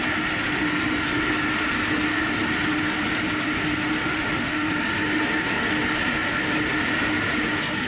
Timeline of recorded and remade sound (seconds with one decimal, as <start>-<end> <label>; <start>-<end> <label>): 0.0-4.0 recorded; 4.0-4.7 remade; 4.7-7.9 recorded